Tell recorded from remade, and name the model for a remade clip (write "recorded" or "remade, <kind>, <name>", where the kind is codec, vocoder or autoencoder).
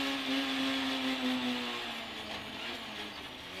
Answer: recorded